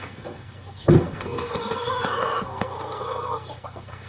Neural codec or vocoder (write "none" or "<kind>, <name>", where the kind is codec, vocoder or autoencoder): codec, SNAC